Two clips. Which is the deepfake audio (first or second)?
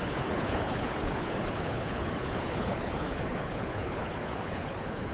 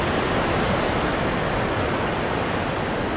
first